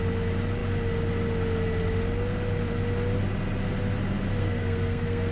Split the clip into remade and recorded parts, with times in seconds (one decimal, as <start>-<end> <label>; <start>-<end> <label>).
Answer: 0.0-4.4 recorded; 4.4-5.3 remade